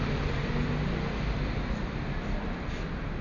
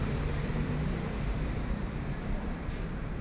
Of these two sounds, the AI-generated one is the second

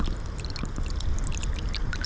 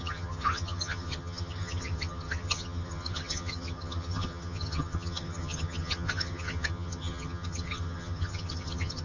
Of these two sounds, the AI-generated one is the second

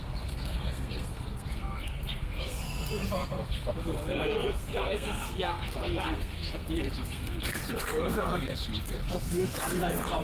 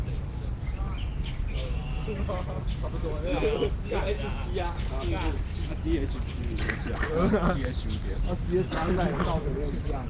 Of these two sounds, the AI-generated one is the first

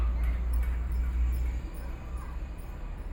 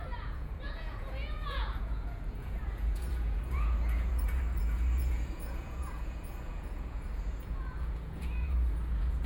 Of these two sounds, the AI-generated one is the second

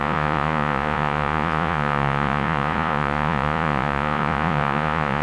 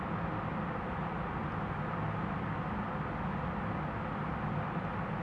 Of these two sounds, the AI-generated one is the first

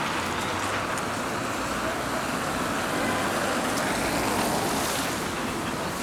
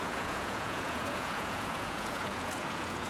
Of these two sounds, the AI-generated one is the second